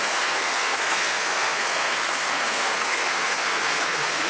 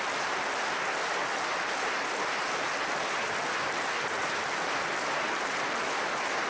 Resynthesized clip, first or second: first